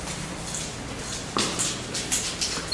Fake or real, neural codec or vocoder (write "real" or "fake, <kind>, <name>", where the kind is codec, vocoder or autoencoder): real